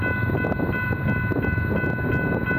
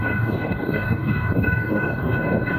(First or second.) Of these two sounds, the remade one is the second